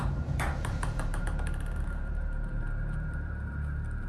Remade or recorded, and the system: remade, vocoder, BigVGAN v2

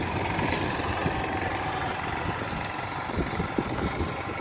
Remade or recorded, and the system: remade, vocoder, BigVGAN v2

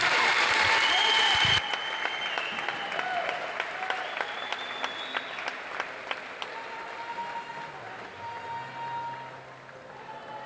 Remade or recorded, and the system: recorded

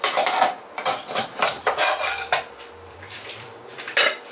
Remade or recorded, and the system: remade, vocoder, BigVGAN v2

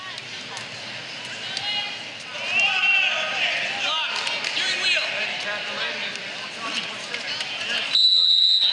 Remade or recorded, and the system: recorded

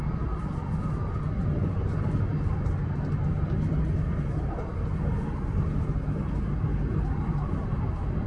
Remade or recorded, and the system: recorded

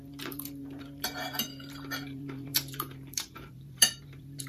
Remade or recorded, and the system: remade, vocoder, BigVGAN v2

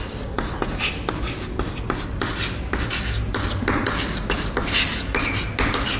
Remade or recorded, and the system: recorded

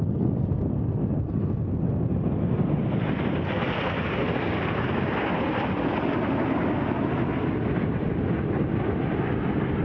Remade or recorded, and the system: recorded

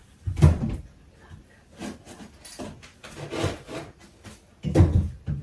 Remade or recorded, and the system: recorded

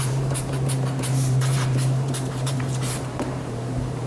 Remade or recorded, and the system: remade, vocoder, BigVGAN v2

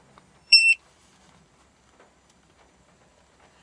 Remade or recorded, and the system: remade, vocoder, BigVGAN v2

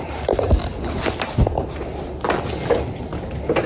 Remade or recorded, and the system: recorded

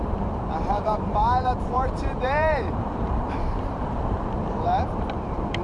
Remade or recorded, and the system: remade, vocoder, BigVGAN v2